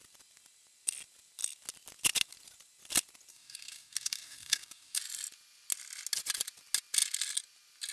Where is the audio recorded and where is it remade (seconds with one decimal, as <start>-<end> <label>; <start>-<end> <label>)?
0.0-3.3 recorded; 3.3-5.0 remade; 5.0-7.9 recorded